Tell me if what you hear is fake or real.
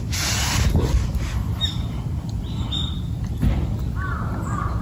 real